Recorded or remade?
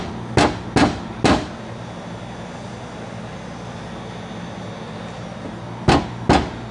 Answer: recorded